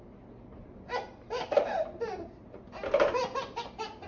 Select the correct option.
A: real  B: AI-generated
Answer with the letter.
A